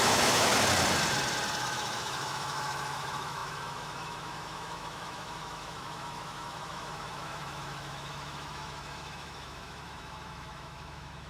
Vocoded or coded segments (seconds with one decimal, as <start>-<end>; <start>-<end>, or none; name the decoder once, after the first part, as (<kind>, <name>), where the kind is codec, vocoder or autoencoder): 0.0-0.5 (autoencoder, DAC-VAE); 1.6-11.3